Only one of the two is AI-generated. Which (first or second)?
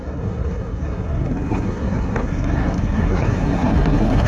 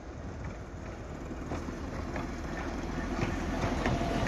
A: first